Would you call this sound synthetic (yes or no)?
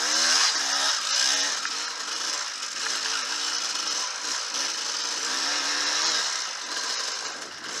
no